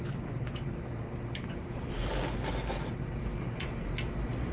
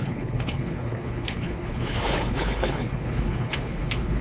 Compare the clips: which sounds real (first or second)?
first